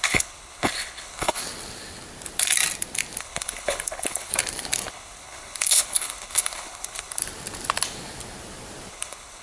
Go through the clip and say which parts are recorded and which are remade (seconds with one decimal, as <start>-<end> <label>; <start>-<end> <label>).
0.0-1.4 remade; 1.4-3.2 recorded; 3.2-4.3 remade; 4.3-4.9 recorded; 4.9-7.2 remade; 7.2-8.9 recorded; 8.9-9.4 remade